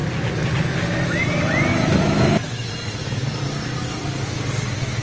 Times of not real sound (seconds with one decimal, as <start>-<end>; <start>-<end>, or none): 1.7-2.7